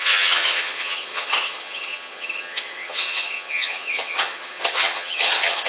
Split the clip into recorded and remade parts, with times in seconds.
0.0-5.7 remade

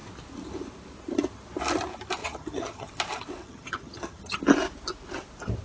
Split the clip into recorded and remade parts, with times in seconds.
0.0-2.2 recorded; 2.2-2.9 remade; 2.9-3.4 recorded; 3.4-4.4 remade; 4.4-5.6 recorded

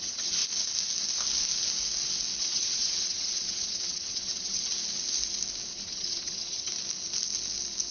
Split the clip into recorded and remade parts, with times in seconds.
0.0-0.4 remade; 0.4-2.4 recorded; 2.4-4.7 remade; 4.7-5.7 recorded; 5.7-6.7 remade; 6.7-7.9 recorded

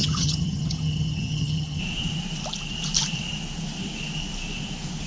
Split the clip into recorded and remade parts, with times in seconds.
0.0-1.8 remade; 1.8-5.1 recorded

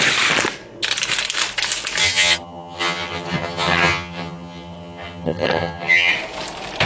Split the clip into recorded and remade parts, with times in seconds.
0.0-2.0 recorded; 2.0-6.1 remade; 6.1-6.9 recorded

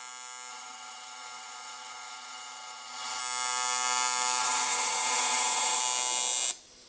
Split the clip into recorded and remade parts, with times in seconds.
0.0-0.5 recorded; 0.5-3.2 remade; 3.2-4.4 recorded; 4.4-5.8 remade; 5.8-6.9 recorded

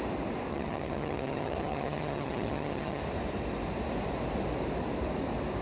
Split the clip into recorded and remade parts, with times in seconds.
0.0-0.5 recorded; 0.5-3.0 remade; 3.0-5.6 recorded

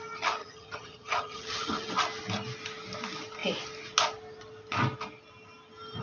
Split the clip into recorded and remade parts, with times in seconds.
0.0-0.4 recorded; 0.4-1.9 remade; 1.9-6.0 recorded